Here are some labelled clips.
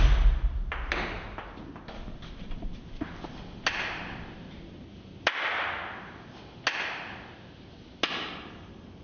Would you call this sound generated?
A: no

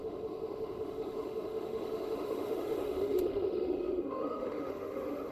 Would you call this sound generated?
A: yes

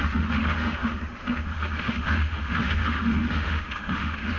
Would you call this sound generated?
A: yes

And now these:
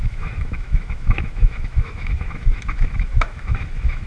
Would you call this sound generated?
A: yes